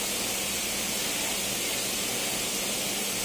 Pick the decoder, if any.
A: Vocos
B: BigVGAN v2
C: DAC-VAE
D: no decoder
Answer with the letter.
D